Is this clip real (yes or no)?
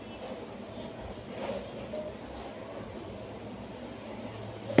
yes